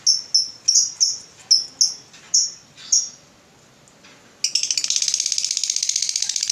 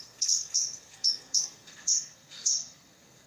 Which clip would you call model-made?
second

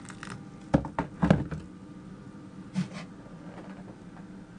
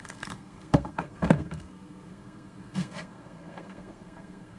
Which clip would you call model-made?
second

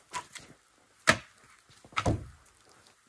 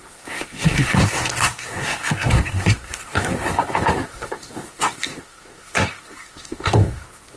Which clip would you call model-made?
second